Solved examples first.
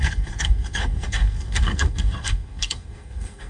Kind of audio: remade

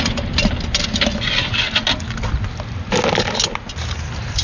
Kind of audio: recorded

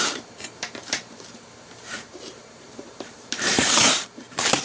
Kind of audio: remade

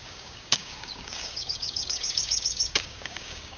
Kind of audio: remade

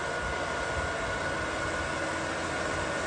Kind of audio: recorded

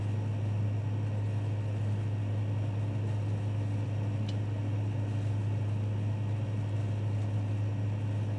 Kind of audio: recorded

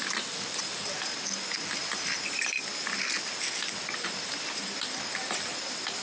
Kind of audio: recorded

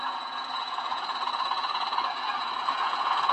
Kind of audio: remade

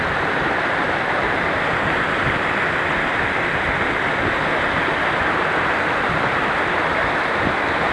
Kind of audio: recorded